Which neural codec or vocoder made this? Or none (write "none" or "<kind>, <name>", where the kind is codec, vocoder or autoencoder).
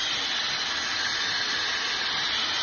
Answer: none